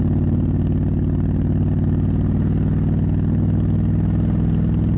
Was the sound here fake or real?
real